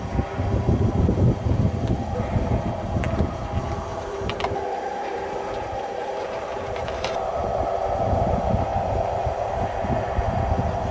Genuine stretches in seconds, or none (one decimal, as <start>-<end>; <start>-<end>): 0.0-3.9; 7.4-8.7; 9.5-10.9